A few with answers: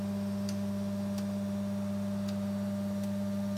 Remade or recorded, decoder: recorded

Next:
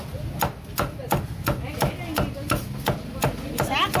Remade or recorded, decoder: recorded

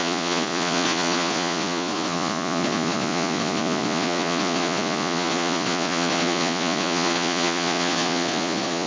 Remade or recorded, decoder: remade, vocoder, Vocos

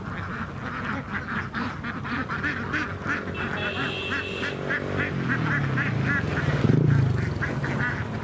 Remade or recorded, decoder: recorded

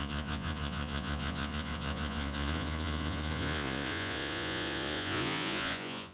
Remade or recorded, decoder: remade, vocoder, Vocos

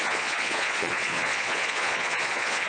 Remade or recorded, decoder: remade, vocoder, Vocos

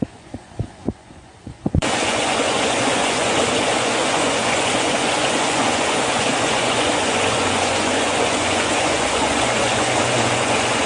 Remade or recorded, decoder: remade, vocoder, Vocos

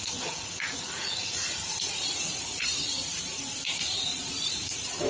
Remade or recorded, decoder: remade, vocoder, Vocos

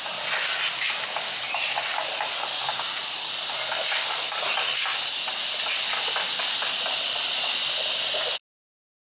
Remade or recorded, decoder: recorded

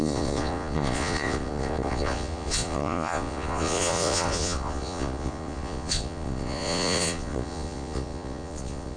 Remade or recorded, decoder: remade, vocoder, Vocos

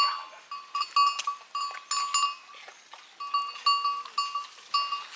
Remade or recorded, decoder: recorded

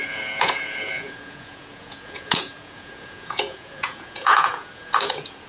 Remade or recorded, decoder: remade, vocoder, Vocos